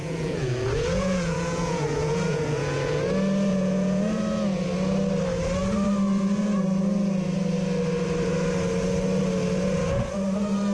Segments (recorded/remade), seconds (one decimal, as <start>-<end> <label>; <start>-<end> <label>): 0.0-3.0 remade; 3.0-3.5 recorded; 3.5-4.2 remade; 4.2-10.7 recorded